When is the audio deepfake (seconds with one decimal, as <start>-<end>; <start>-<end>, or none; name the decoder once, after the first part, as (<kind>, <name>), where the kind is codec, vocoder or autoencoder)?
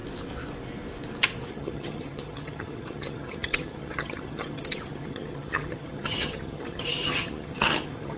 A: 1.5-8.2 (vocoder, HiFi-GAN)